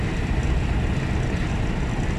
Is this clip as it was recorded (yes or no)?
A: yes